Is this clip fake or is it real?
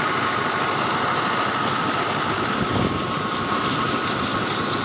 real